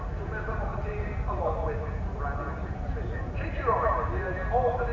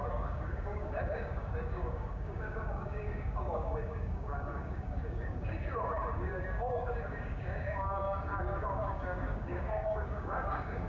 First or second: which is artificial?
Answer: second